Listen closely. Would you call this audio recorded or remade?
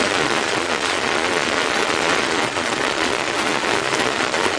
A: remade